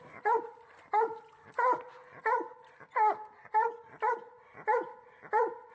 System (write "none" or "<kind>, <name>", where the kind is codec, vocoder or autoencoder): none